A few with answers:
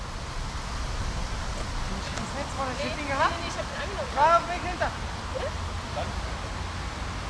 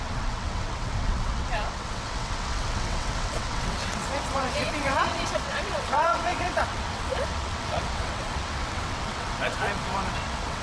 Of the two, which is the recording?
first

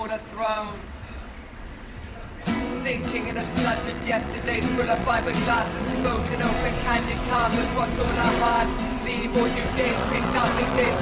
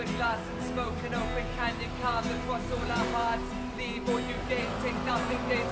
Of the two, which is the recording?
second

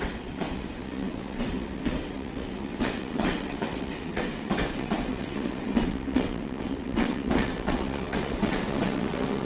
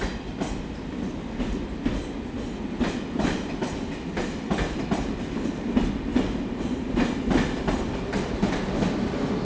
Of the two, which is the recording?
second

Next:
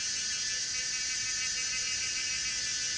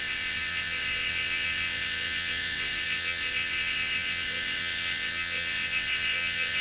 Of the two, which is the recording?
first